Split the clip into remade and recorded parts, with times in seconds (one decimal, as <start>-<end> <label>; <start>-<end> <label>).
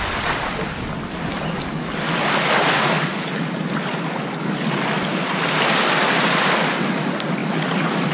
0.0-8.1 recorded